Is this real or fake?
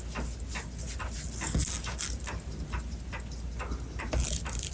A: real